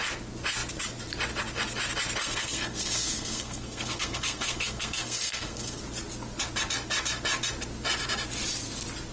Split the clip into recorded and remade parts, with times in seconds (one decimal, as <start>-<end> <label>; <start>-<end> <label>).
0.0-2.2 recorded; 2.2-5.8 remade; 5.8-9.1 recorded